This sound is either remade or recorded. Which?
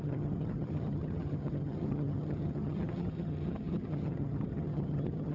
remade